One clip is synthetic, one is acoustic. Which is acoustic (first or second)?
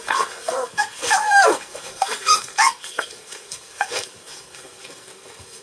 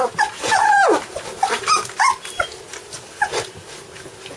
second